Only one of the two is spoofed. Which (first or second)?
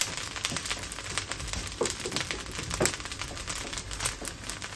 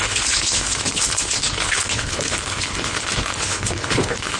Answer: second